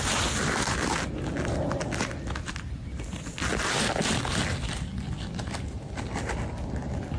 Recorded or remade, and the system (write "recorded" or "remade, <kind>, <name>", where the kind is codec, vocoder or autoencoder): recorded